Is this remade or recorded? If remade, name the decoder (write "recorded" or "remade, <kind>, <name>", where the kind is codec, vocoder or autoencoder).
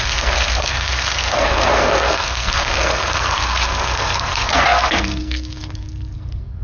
remade, codec, SNAC